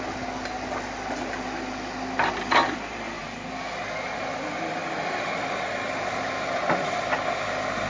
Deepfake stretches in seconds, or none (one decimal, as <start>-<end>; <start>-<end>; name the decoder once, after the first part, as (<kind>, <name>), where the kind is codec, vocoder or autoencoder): none